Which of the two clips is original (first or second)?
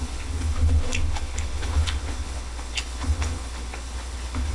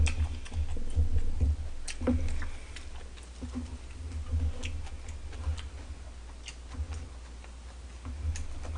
second